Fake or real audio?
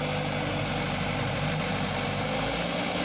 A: real